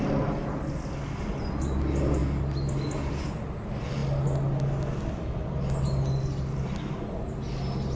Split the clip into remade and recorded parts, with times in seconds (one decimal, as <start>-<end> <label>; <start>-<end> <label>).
0.0-8.0 recorded